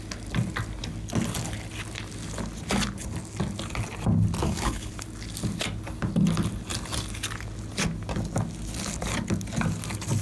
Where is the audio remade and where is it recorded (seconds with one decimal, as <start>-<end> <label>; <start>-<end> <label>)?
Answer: 0.0-4.4 recorded; 4.4-4.9 remade; 4.9-10.2 recorded